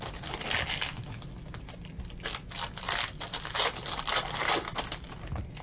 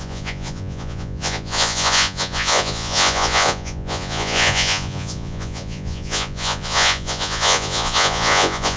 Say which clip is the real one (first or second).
first